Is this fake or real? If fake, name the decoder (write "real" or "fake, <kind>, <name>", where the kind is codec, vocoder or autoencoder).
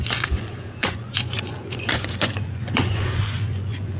fake, vocoder, Vocos